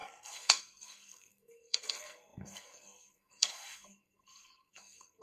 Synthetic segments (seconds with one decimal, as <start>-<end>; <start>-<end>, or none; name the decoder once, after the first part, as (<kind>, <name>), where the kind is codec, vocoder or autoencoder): 0.0-5.2 (codec, SNAC)